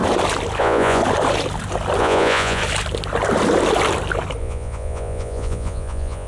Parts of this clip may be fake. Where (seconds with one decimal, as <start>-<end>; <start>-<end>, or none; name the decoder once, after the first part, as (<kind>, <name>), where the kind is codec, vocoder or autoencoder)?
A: 0.6-1.0 (vocoder, Vocos); 2.0-2.6; 4.4-6.3